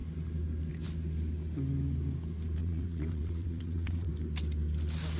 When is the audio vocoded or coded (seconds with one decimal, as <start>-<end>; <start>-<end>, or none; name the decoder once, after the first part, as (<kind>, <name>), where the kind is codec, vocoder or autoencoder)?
2.6-4.1 (vocoder, WaveNeXt)

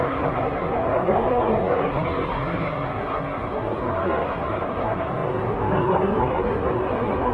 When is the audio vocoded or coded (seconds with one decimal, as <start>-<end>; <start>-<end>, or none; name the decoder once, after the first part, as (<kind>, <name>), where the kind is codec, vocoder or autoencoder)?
0.0-7.3 (codec, SNAC)

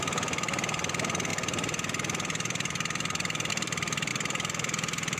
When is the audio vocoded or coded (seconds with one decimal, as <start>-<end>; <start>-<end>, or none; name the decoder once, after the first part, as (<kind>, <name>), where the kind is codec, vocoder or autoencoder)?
none

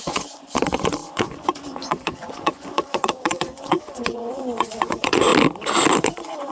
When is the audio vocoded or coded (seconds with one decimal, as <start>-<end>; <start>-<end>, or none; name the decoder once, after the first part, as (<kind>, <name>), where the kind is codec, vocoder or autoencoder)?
0.0-5.3 (vocoder, Vocos); 6.0-6.5